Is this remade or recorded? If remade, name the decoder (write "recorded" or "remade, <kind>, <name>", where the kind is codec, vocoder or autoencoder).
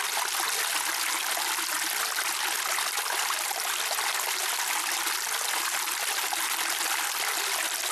recorded